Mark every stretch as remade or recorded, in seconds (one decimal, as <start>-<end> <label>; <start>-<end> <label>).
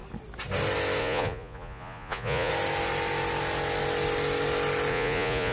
0.0-1.0 recorded; 1.0-2.5 remade; 2.5-4.9 recorded; 4.9-5.5 remade